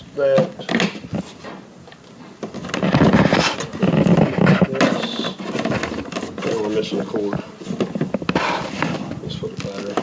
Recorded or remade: recorded